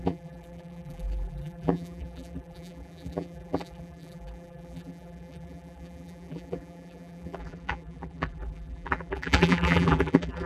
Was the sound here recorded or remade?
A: remade